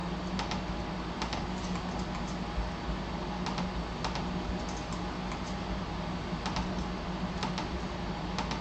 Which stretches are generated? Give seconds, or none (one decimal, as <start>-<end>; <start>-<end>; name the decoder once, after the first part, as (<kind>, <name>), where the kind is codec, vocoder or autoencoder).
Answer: none